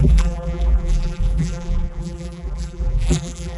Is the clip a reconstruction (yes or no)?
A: yes